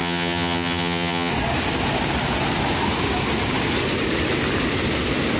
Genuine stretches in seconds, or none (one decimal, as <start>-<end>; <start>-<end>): 1.3-5.4